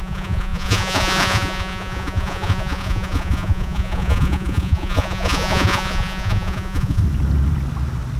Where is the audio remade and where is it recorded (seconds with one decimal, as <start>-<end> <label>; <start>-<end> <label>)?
0.0-7.0 remade; 7.0-8.2 recorded